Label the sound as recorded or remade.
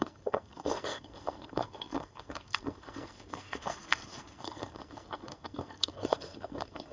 remade